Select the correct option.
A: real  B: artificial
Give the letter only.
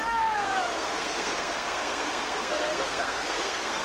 B